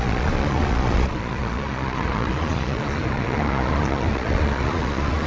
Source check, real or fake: fake